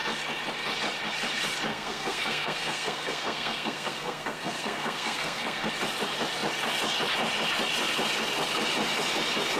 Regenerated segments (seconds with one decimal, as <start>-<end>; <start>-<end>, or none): 1.7-5.7